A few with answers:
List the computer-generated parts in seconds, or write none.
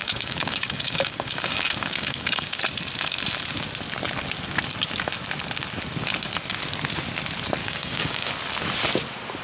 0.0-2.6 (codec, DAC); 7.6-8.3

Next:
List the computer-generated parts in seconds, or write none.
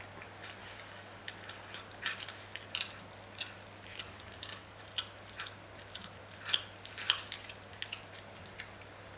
0.6-1.2 (codec, DAC); 3.9-4.8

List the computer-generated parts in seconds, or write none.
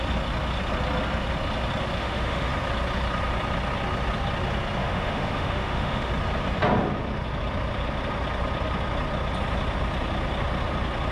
2.0-2.5 (autoencoder, DAC-VAE); 4.8-6.1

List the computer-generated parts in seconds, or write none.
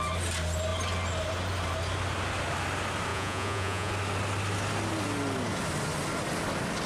3.1-3.9 (vocoder, Vocos)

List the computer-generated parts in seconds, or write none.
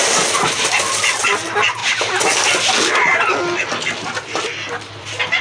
none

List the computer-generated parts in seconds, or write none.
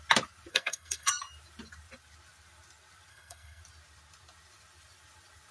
0.5-1.2 (codec, SNAC); 3.1-3.6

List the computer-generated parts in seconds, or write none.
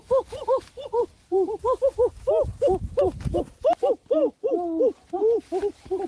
1.0-1.5 (vocoder, BigVGAN v2); 2.5-3.4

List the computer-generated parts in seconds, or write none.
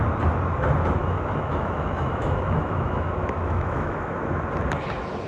1.0-4.2 (autoencoder, DAC-VAE)